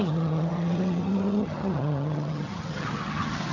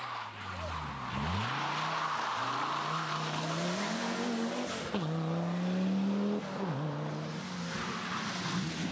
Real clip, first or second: second